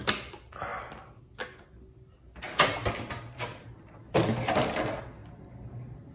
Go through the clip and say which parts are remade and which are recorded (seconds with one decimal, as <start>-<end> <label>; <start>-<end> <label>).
0.0-6.1 recorded